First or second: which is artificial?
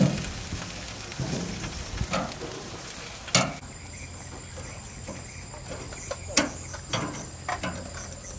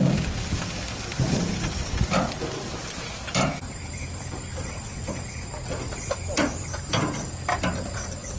second